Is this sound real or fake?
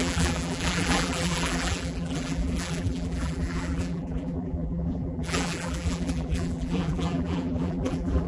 fake